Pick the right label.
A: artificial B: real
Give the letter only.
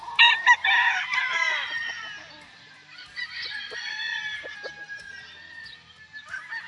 B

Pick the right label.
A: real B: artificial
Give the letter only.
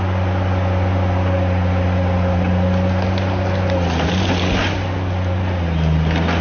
A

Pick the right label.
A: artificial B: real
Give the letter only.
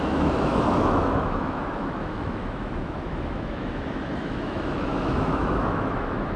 A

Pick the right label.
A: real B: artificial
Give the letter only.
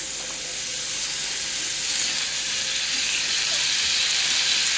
A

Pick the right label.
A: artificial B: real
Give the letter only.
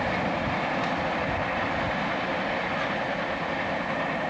B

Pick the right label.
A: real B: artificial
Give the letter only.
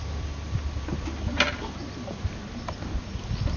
A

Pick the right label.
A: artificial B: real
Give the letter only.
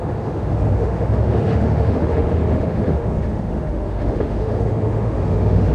A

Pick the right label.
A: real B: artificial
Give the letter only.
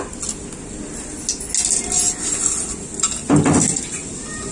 A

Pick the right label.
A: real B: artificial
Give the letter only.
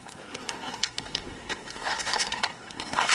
B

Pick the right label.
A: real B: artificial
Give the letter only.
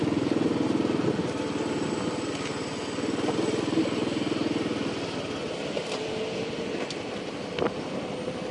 A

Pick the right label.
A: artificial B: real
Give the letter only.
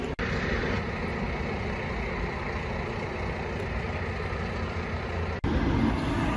B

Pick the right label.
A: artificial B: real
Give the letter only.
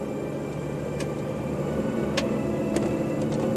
B